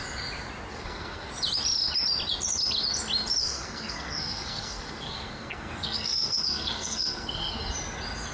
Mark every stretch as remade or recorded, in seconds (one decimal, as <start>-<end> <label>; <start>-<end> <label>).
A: 0.0-0.7 recorded; 0.7-1.3 remade; 1.3-3.4 recorded; 3.4-7.6 remade; 7.6-8.3 recorded